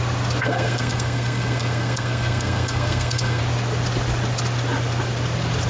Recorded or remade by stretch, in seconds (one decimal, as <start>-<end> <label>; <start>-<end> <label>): 0.0-0.4 recorded; 0.4-3.4 remade; 3.4-5.7 recorded